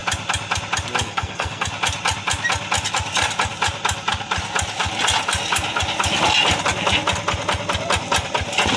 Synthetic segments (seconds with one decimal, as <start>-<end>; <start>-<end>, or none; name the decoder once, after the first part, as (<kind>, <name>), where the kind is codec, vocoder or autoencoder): 1.0-1.7 (codec, SNAC)